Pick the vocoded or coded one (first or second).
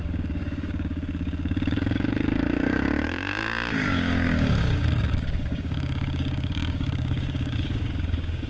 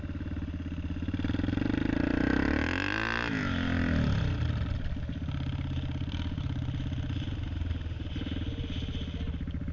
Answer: first